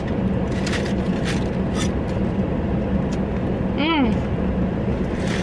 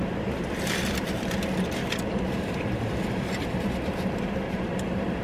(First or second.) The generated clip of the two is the second